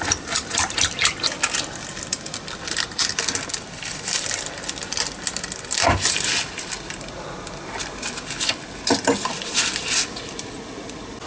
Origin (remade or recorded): recorded